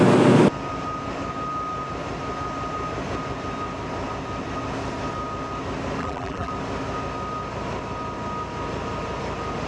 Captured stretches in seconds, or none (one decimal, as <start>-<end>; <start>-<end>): 0.0-6.0; 6.5-9.7